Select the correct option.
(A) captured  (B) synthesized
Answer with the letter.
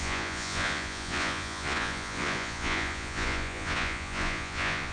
B